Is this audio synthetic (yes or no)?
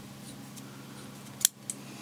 no